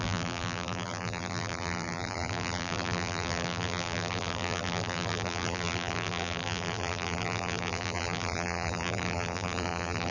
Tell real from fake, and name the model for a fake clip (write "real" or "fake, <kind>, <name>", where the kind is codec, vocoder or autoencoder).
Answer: fake, vocoder, BigVGAN v2